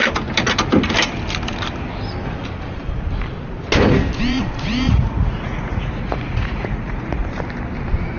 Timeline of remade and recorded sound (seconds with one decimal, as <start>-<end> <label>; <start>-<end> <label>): 0.0-4.2 recorded; 4.2-7.2 remade; 7.2-8.2 recorded